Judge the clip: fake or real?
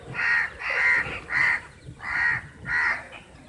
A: fake